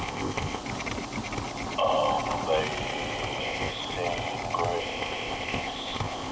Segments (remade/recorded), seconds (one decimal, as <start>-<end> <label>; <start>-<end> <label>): 0.0-0.6 remade; 0.6-3.4 recorded; 3.4-3.8 remade; 3.8-4.8 recorded; 4.8-6.3 remade